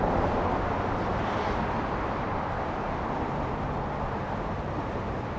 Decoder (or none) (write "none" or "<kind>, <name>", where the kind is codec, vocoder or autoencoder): none